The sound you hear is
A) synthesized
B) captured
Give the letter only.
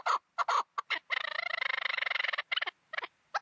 B